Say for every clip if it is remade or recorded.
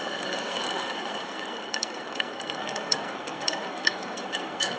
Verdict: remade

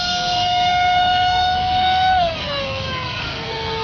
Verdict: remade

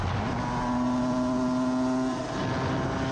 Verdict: recorded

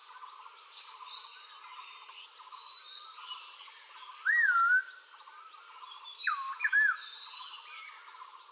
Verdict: recorded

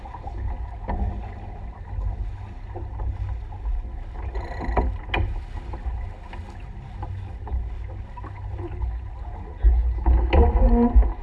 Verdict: recorded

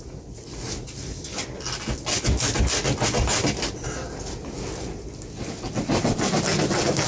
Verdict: recorded